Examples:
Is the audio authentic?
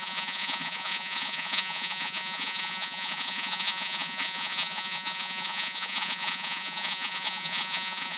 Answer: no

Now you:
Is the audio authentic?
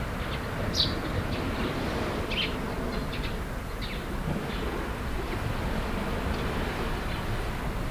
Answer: yes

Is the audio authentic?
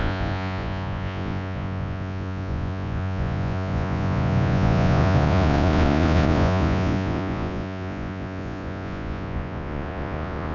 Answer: no